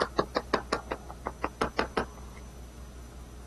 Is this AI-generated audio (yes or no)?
no